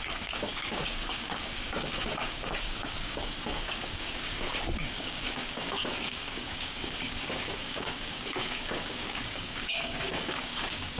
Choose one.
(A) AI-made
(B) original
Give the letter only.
A